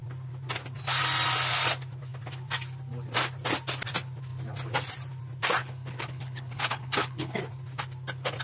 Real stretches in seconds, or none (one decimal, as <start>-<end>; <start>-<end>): 0.0-5.6; 7.4-8.4